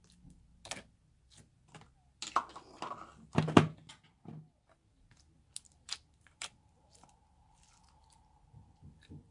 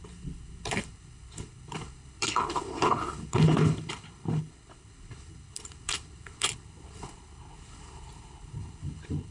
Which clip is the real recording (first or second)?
first